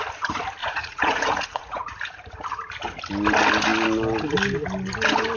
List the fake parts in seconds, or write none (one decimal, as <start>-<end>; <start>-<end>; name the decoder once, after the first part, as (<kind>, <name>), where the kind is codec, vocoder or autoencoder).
0.6-1.9 (vocoder, Vocos)

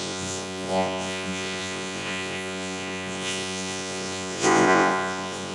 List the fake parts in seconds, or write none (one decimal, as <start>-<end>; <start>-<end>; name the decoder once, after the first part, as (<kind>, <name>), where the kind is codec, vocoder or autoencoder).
0.0-5.5 (vocoder, Vocos)

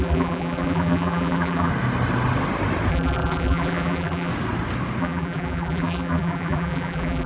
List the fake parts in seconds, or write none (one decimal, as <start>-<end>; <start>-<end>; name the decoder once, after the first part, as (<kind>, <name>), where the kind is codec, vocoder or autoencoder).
0.0-1.7 (vocoder, BigVGAN v2); 2.9-4.3; 5.0-7.3